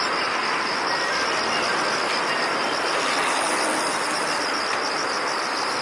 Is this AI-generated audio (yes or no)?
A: no